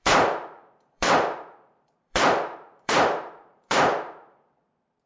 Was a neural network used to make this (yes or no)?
yes